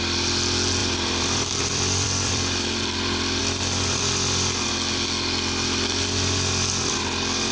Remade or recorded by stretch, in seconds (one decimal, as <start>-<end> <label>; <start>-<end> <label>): 0.0-0.8 recorded; 0.8-3.4 remade; 3.4-7.5 recorded